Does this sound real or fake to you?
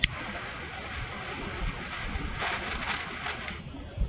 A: real